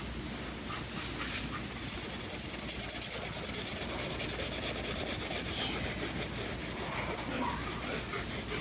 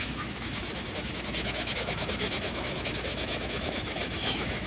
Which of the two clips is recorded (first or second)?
first